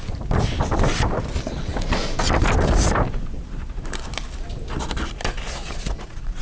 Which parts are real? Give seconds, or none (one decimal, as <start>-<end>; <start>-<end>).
0.0-5.6